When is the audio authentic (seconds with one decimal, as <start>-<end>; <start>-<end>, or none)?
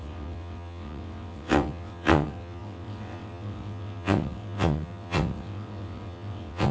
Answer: none